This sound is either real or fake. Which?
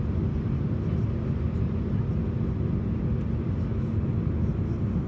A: real